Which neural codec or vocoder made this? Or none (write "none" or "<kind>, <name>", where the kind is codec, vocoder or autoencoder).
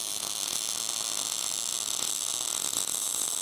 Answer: none